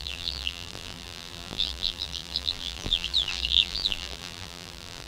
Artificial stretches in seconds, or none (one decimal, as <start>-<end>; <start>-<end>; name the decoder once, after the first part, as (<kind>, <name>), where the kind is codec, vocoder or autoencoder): 0.0-5.1 (vocoder, BigVGAN v2)